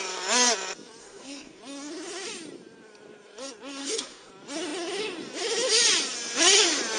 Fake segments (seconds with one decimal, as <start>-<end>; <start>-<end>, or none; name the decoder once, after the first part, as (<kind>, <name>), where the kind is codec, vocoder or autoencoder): 1.0-1.6 (codec, SNAC); 3.8-4.3